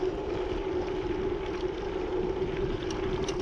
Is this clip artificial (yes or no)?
no